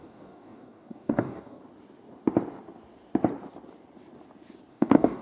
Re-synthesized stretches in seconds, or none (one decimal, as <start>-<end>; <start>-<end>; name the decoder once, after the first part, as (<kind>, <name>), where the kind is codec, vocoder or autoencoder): 0.0-1.6 (codec, DAC); 4.7-5.2